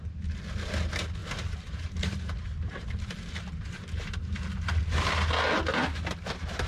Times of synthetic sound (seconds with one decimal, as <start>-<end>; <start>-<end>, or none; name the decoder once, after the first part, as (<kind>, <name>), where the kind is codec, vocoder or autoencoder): 1.2-4.8 (vocoder, BigVGAN v2)